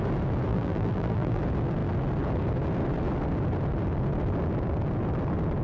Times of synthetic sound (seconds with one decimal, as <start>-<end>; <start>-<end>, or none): 0.5-1.4